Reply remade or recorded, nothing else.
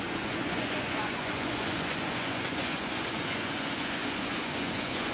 remade